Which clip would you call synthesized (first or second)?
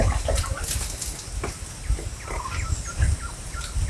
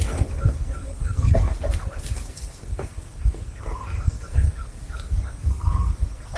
second